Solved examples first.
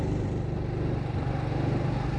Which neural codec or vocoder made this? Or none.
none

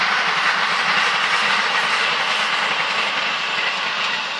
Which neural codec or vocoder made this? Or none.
none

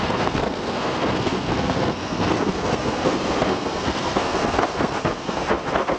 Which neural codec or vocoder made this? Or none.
codec, SNAC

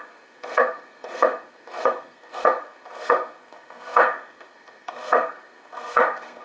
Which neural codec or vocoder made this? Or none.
codec, SNAC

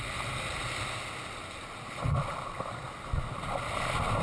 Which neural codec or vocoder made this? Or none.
none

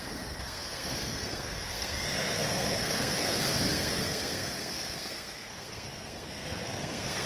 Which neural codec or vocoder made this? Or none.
codec, SNAC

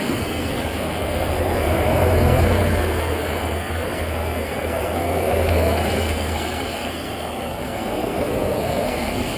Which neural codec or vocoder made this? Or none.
codec, SNAC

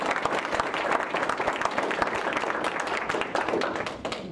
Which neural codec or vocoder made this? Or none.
none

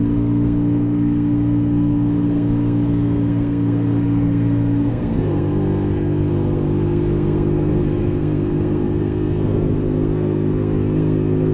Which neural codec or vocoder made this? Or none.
codec, SNAC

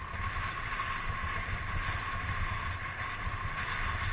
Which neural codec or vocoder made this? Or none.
none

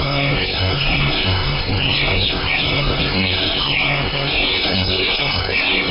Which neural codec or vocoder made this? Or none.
codec, SNAC